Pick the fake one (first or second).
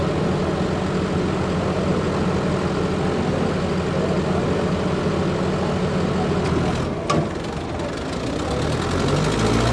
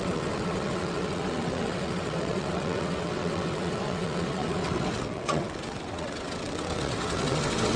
second